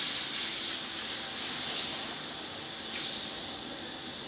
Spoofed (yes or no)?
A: no